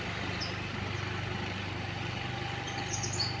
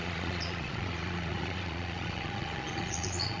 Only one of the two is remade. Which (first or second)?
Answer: second